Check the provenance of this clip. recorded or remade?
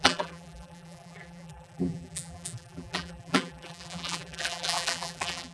remade